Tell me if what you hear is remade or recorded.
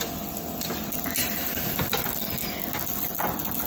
recorded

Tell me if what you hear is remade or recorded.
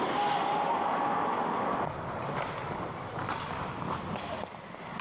recorded